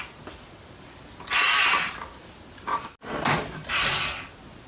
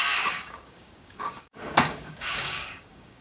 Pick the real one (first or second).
first